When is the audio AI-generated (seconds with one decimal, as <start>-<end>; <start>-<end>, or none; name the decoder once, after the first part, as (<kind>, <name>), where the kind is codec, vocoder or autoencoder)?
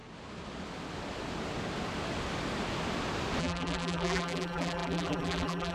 3.4-5.7 (vocoder, BigVGAN v2)